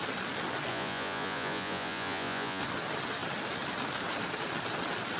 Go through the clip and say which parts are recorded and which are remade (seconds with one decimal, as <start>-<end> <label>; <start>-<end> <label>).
0.0-0.7 recorded; 0.7-2.6 remade; 2.6-5.2 recorded